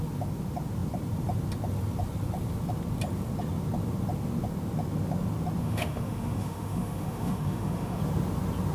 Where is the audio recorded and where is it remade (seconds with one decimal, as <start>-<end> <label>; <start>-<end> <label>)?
0.0-5.6 recorded; 5.6-8.0 remade; 8.0-8.7 recorded